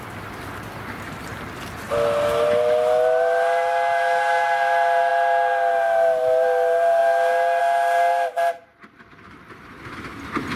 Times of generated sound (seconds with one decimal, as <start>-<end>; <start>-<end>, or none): none